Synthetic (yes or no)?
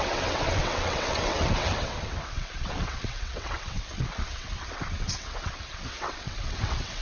yes